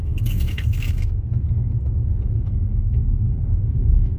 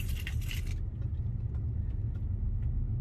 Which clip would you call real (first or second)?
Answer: second